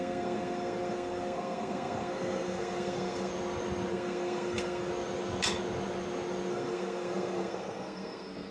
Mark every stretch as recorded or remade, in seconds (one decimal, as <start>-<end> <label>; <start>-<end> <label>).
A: 0.0-3.3 remade; 3.3-3.9 recorded; 3.9-4.9 remade; 4.9-6.5 recorded; 6.5-8.5 remade